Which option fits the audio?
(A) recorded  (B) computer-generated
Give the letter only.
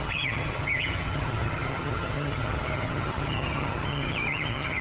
B